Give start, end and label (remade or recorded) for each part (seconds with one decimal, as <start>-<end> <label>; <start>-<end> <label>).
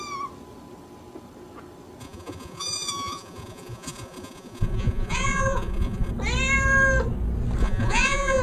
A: 0.0-2.0 recorded; 2.0-6.1 remade; 6.1-7.6 recorded; 7.6-8.4 remade